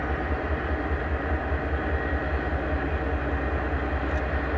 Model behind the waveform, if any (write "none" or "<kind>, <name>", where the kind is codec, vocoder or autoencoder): none